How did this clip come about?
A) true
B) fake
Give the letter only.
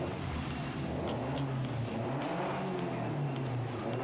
A